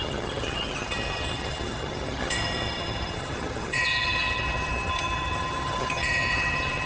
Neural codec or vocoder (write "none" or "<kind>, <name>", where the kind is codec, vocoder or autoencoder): vocoder, HiFi-GAN